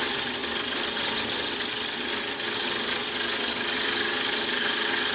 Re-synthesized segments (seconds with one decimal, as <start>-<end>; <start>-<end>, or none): none

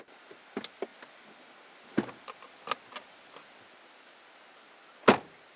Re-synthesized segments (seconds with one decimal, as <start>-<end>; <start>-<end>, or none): none